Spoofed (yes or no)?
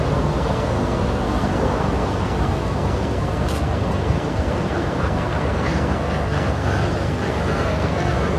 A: yes